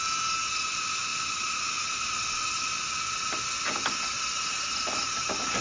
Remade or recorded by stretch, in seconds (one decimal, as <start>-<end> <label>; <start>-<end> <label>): 0.0-5.6 recorded